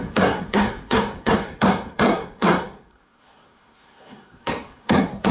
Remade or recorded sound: remade